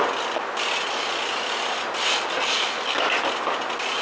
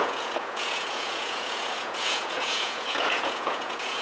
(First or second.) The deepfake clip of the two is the second